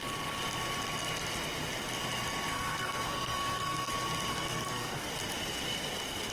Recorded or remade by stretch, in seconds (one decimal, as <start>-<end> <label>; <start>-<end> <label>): 0.0-2.5 recorded; 2.5-3.9 remade; 3.9-4.3 recorded; 4.3-5.1 remade; 5.1-6.3 recorded